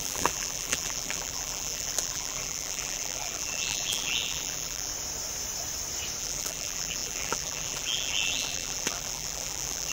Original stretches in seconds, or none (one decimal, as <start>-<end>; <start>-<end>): 4.9-6.2